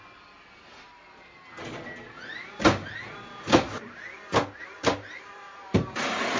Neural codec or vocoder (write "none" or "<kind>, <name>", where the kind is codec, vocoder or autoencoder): none